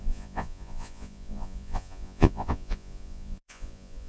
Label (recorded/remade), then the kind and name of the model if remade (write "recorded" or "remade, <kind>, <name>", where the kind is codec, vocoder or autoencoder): remade, vocoder, Vocos